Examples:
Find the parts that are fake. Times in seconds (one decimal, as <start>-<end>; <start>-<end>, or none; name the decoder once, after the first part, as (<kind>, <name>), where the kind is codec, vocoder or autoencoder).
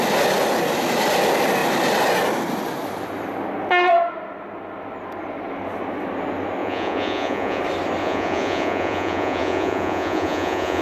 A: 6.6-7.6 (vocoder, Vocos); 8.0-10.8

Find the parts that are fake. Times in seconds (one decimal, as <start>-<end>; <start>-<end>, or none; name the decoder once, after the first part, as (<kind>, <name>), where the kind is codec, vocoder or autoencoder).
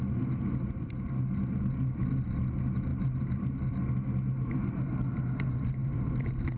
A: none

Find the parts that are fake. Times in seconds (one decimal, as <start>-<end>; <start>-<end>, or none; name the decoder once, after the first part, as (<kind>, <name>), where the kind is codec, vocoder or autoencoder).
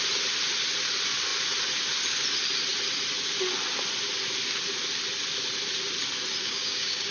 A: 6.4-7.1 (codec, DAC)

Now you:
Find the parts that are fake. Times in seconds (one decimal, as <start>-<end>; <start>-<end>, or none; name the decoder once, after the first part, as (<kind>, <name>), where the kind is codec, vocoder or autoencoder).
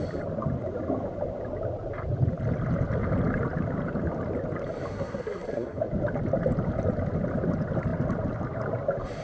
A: 4.9-5.8 (codec, SNAC)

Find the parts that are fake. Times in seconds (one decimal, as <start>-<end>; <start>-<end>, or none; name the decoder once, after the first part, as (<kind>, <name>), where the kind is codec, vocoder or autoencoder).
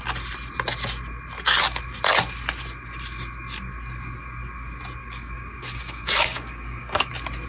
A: 5.0-7.1 (codec, DAC)